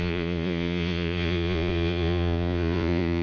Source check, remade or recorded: remade